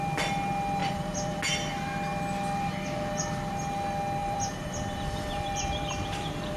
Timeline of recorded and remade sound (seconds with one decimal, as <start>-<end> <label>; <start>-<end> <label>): 0.0-0.8 recorded; 0.8-1.4 remade; 1.4-4.2 recorded; 4.2-6.6 remade